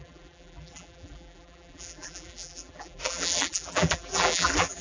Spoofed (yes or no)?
yes